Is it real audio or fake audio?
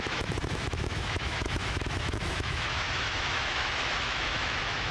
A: fake